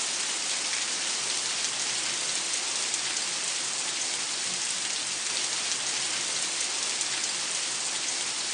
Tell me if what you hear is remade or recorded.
recorded